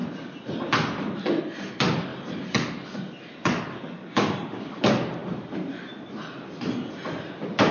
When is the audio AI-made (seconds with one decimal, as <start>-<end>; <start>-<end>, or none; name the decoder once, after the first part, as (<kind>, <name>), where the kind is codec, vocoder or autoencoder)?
4.0-4.8 (codec, DAC)